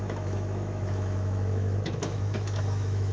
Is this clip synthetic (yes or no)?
yes